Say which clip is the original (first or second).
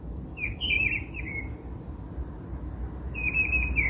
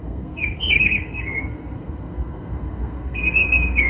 first